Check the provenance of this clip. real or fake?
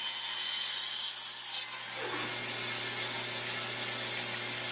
real